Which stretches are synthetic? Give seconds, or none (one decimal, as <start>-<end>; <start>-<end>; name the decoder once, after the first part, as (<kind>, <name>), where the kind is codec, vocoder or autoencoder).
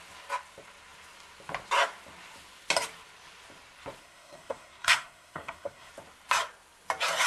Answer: 4.0-5.9 (codec, SNAC)